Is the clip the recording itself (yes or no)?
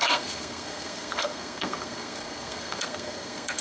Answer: no